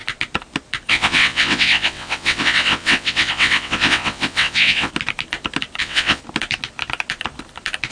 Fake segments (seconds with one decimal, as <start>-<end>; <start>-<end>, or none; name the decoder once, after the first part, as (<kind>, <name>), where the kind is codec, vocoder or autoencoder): 0.9-4.9 (vocoder, WaveNeXt); 5.8-6.2